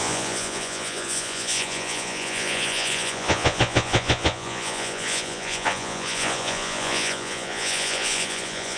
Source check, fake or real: fake